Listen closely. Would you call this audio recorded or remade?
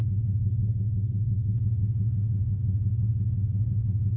remade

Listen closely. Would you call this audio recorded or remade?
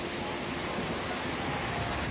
recorded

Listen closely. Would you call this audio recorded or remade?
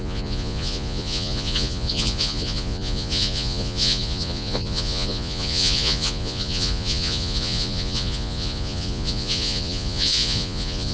remade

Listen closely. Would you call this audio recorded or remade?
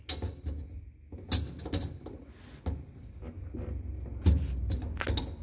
recorded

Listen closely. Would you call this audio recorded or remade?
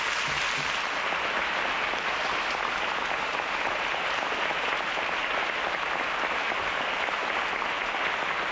recorded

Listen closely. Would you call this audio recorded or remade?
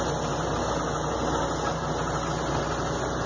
recorded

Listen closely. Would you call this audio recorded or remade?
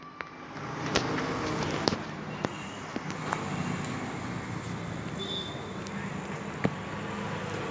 recorded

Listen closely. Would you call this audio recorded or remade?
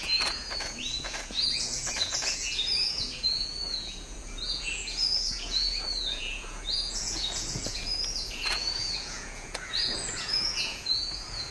remade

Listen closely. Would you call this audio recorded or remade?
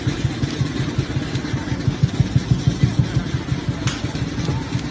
recorded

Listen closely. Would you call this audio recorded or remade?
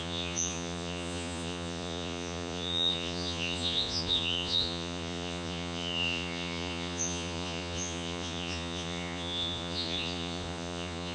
remade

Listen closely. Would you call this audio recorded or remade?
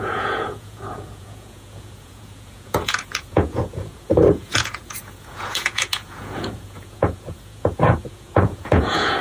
remade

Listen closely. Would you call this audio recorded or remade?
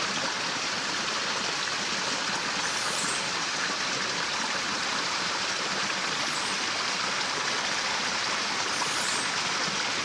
recorded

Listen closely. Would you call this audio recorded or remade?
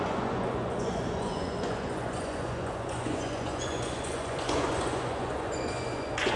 remade